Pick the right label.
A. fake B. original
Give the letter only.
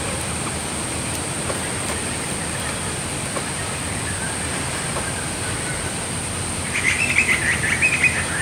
B